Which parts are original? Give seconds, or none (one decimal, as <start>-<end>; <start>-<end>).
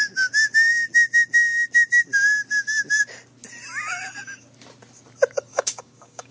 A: 0.0-5.5